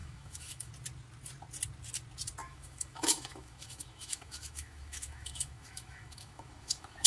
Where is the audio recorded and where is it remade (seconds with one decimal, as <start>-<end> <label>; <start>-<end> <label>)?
0.0-0.7 remade; 0.7-2.4 recorded; 2.4-7.1 remade

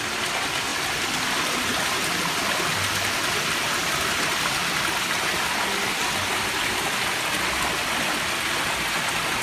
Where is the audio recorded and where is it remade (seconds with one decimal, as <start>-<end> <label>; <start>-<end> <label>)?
0.0-9.4 recorded

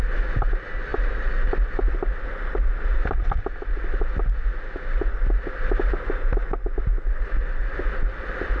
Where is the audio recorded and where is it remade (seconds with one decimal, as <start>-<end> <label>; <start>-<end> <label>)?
0.0-8.6 recorded

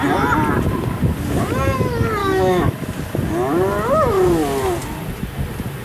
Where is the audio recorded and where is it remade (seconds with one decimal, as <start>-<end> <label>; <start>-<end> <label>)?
0.0-2.2 recorded; 2.2-2.7 remade; 2.7-5.8 recorded

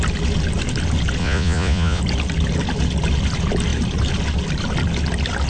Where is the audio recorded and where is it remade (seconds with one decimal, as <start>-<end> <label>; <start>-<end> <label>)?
0.0-1.2 recorded; 1.2-2.0 remade; 2.0-5.5 recorded

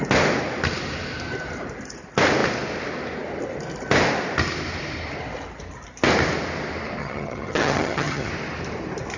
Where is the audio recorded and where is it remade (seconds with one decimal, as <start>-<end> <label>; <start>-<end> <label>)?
0.0-7.0 recorded; 7.0-8.3 remade; 8.3-9.2 recorded

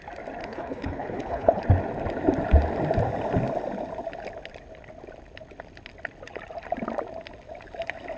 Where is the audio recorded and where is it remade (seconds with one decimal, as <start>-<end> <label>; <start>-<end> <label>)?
0.0-0.4 recorded; 0.4-1.6 remade; 1.6-8.2 recorded